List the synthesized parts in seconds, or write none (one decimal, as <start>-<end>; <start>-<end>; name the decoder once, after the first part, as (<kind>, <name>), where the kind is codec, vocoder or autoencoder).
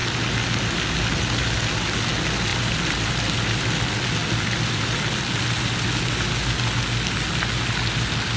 none